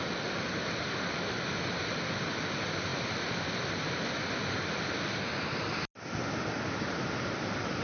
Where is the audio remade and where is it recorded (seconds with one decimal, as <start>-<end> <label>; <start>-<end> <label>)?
0.0-7.8 recorded